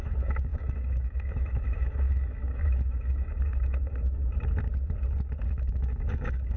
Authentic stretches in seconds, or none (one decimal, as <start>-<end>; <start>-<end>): 4.2-5.5